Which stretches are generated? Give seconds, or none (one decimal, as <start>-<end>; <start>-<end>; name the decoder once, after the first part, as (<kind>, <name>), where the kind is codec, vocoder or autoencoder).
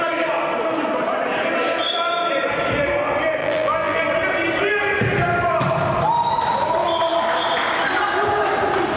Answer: 3.4-4.0 (vocoder, BigVGAN v2)